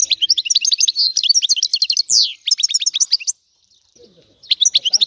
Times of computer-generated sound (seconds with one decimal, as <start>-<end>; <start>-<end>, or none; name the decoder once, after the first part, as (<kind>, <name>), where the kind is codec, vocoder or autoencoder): none